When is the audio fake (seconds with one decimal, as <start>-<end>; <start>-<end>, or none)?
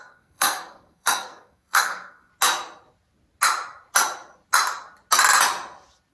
0.0-2.3